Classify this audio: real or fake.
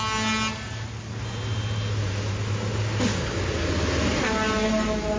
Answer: real